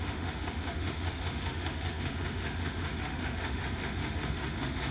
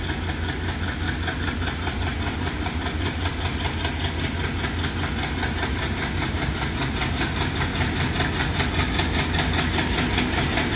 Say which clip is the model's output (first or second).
first